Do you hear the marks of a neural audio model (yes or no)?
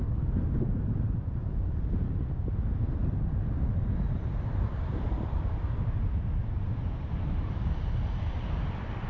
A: yes